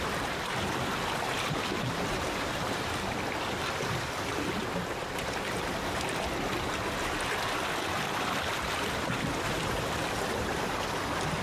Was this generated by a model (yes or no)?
no